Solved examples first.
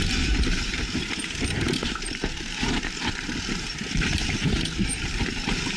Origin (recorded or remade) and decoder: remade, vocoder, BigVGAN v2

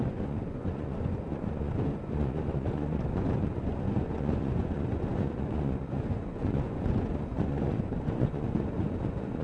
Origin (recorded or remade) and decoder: remade, vocoder, Vocos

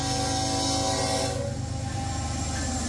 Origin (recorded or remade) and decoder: recorded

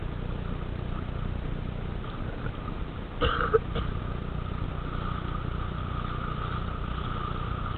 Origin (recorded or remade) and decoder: recorded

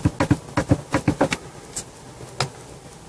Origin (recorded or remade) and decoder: recorded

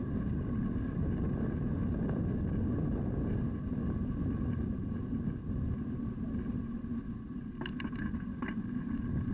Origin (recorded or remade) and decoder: recorded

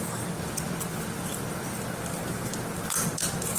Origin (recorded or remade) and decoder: recorded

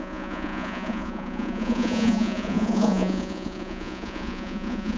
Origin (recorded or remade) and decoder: remade, vocoder, Vocos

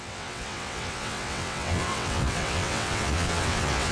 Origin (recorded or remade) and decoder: remade, vocoder, WaveNeXt